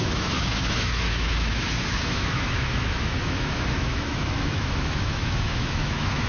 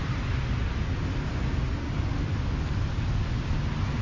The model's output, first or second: first